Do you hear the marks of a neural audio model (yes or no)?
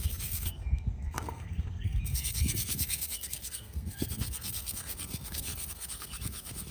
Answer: yes